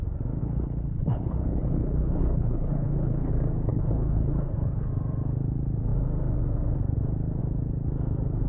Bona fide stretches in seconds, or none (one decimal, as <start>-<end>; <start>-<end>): 0.0-0.4; 3.3-3.7; 4.9-8.5